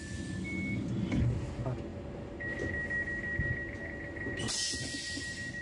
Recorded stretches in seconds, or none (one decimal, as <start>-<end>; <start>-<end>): 0.0-5.6